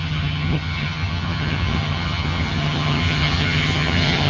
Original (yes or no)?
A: no